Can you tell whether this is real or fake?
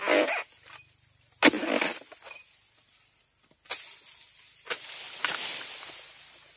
real